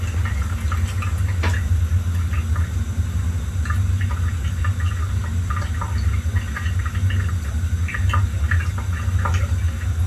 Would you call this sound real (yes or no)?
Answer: yes